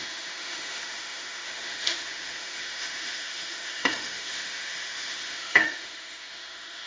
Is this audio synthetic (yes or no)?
yes